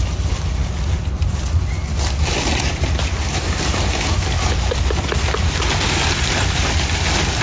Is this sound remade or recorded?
recorded